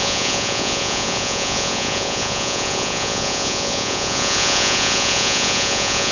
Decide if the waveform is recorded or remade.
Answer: remade